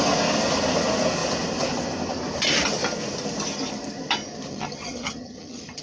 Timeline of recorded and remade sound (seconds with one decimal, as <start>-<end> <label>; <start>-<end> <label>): 0.0-4.5 recorded; 4.5-5.8 remade